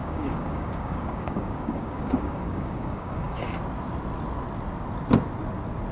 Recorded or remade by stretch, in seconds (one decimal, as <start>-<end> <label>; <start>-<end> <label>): 0.0-3.5 remade; 3.5-5.9 recorded